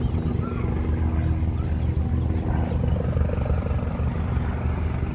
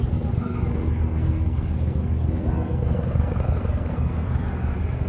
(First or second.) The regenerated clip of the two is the second